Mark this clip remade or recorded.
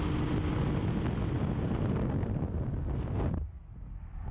recorded